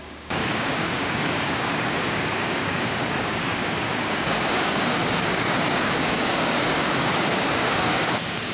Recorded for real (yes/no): no